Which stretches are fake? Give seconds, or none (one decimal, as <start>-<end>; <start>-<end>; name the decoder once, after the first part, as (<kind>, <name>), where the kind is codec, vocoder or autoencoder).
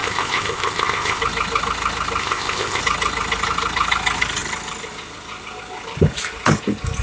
0.0-1.2 (codec, ZipCodec); 2.2-2.8